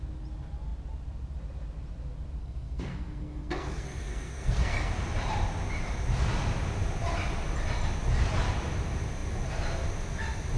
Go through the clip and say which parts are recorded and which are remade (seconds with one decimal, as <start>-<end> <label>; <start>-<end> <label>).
0.0-2.4 recorded; 2.4-4.9 remade; 4.9-10.6 recorded